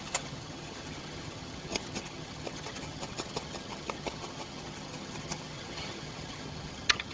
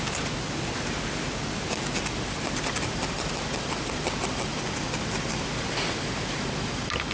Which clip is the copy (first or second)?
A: first